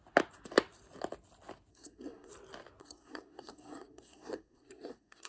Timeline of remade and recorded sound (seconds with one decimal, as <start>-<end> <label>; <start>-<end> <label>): 0.0-1.7 recorded; 1.7-2.3 remade; 2.3-2.8 recorded; 2.8-5.3 remade